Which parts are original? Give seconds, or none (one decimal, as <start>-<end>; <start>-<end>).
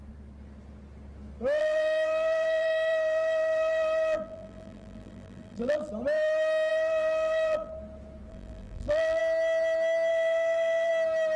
0.0-1.6; 5.9-6.7; 7.7-8.3; 9.2-10.1; 10.9-11.4